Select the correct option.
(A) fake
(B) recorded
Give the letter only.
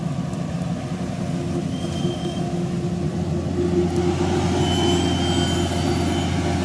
B